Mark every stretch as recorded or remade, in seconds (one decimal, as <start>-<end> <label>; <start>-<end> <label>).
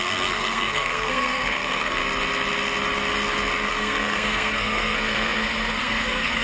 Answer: 0.0-2.0 remade; 2.0-3.7 recorded; 3.7-6.4 remade